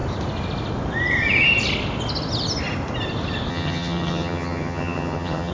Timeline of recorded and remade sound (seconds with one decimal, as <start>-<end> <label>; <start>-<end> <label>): 0.0-3.5 recorded; 3.5-5.5 remade